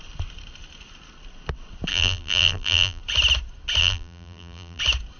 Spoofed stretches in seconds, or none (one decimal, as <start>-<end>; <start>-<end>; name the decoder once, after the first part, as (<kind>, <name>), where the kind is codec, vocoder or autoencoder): 1.9-3.0 (vocoder, BigVGAN v2); 3.8-4.8